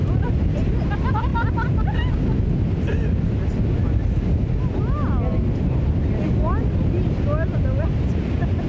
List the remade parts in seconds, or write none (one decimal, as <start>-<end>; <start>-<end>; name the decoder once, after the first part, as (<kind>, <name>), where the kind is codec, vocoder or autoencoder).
none